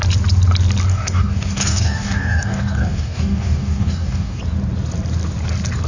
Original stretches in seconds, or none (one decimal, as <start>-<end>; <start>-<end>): 0.0-0.9; 4.4-5.9